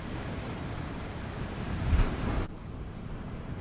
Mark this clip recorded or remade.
remade